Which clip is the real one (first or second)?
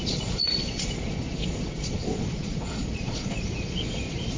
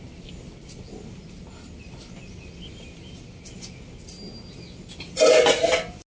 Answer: second